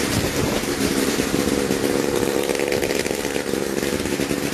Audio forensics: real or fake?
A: fake